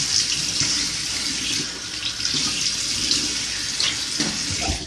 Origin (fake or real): real